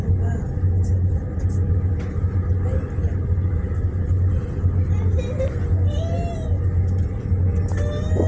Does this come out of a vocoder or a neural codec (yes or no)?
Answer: no